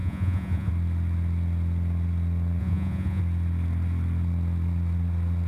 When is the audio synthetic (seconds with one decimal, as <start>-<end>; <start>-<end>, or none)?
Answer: 0.0-0.7; 2.6-3.2